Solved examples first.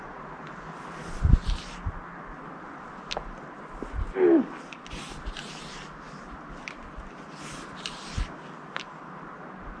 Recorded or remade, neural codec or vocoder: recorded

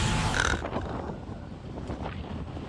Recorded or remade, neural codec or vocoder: recorded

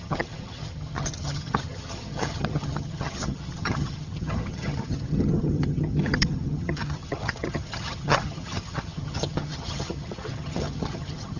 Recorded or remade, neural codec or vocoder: remade, vocoder, HiFi-GAN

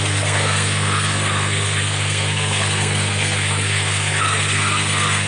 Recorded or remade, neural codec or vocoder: remade, codec, SNAC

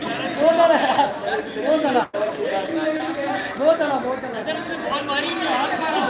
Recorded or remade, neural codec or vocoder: recorded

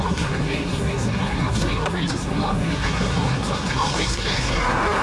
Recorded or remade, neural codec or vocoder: remade, codec, SNAC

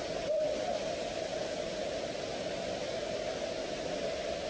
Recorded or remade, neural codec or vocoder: recorded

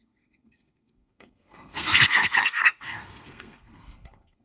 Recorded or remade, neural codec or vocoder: remade, codec, SNAC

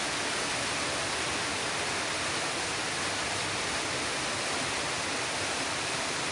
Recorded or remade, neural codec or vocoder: recorded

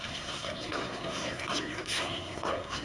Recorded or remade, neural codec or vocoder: remade, codec, SNAC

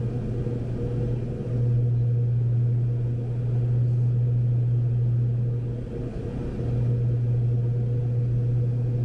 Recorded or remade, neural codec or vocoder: recorded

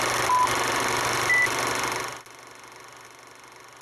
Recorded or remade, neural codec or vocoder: recorded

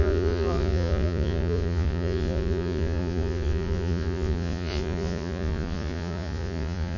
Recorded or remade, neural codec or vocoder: remade, vocoder, Vocos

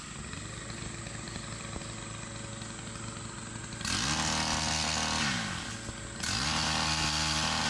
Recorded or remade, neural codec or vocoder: recorded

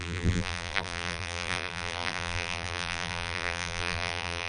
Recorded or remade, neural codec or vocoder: remade, vocoder, BigVGAN v2